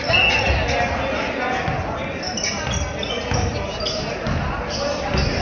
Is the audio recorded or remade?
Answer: recorded